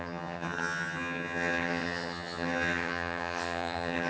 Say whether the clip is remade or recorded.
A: remade